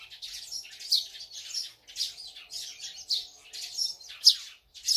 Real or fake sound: real